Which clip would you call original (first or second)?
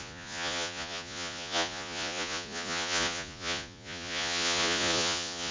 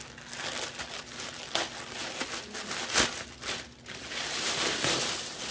second